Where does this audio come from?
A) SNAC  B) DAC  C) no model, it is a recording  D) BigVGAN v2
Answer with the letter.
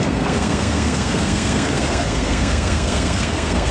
A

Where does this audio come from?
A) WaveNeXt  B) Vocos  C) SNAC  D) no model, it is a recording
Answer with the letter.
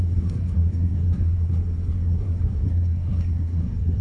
C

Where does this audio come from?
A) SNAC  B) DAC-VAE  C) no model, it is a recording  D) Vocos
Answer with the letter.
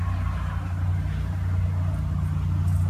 C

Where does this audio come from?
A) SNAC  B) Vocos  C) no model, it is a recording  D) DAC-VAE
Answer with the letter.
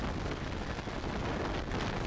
C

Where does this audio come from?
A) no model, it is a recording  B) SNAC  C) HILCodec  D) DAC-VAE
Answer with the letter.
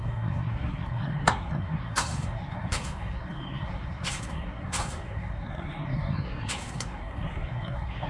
B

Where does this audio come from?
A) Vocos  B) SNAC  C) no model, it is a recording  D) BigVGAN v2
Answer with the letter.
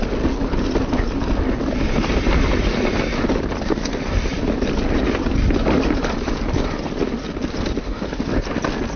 C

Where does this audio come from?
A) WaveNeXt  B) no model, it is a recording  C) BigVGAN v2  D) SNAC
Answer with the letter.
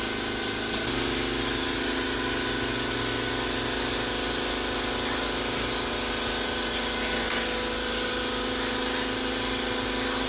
B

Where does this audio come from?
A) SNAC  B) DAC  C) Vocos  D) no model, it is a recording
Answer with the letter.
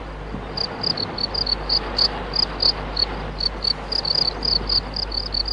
D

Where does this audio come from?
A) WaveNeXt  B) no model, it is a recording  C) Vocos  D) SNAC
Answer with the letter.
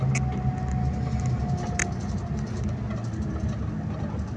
B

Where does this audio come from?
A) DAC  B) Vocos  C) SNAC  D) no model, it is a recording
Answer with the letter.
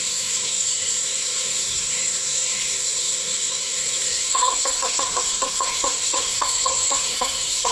C